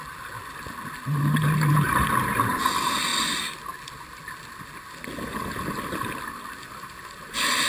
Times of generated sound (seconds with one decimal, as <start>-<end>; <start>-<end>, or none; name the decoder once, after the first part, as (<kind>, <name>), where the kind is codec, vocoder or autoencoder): none